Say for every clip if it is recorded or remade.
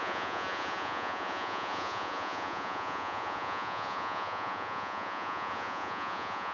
remade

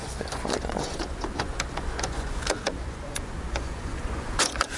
remade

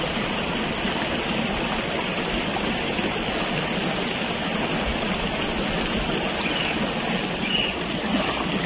recorded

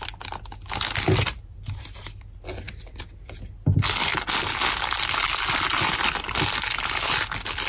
recorded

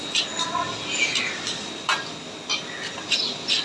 recorded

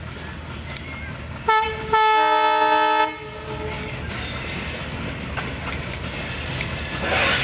recorded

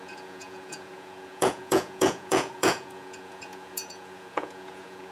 remade